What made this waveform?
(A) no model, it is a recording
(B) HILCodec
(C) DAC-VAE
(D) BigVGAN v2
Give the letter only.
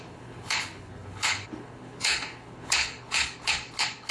B